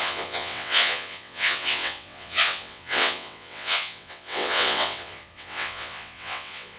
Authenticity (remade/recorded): remade